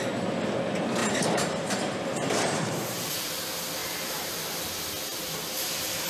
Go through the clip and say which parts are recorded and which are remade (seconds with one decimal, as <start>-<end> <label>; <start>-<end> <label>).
0.0-1.0 recorded; 1.0-3.3 remade; 3.3-3.8 recorded; 3.8-4.4 remade; 4.4-5.1 recorded; 5.1-6.1 remade